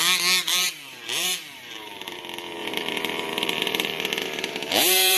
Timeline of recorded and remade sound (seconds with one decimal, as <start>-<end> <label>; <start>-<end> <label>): 0.0-0.6 recorded; 0.6-2.2 remade; 2.2-2.6 recorded; 2.6-5.2 remade

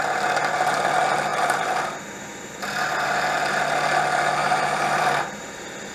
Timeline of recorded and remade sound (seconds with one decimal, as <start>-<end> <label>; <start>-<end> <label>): 0.0-1.3 recorded; 1.3-2.4 remade; 2.4-4.4 recorded; 4.4-5.4 remade; 5.4-5.9 recorded